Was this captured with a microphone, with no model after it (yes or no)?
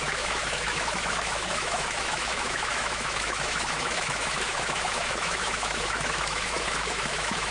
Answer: no